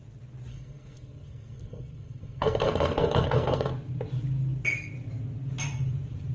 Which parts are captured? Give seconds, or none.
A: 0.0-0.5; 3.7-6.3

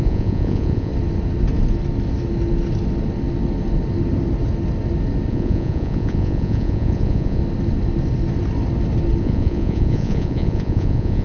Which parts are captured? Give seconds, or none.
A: 0.9-5.3; 7.4-9.2

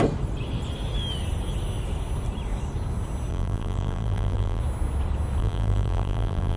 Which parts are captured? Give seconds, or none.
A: 0.0-3.3; 4.6-5.4

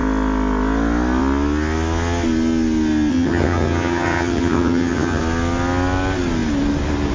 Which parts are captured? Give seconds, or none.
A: 0.0-3.1; 5.2-7.1